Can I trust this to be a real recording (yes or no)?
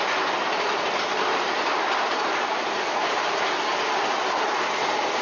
yes